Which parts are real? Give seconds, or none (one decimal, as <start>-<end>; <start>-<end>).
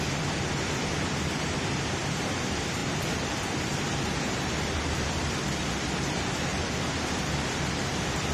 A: none